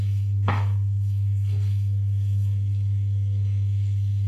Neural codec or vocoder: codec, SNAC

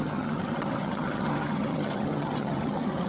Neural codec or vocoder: vocoder, HiFi-GAN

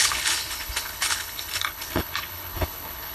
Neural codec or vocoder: codec, HILCodec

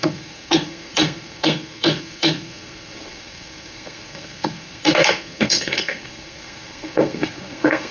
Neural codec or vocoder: codec, SNAC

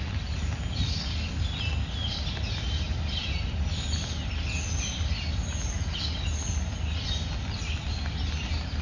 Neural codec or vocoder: none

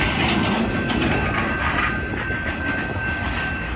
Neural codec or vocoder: none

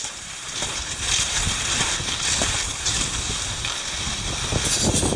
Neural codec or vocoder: none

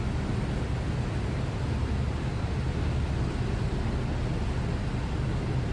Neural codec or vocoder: none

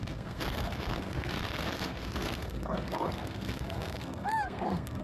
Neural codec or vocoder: codec, SNAC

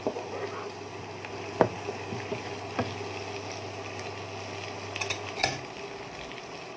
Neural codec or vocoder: none